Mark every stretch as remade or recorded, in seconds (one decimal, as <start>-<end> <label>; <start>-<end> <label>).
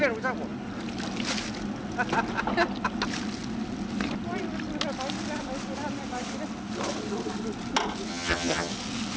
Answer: 0.0-8.1 recorded; 8.1-8.7 remade; 8.7-9.2 recorded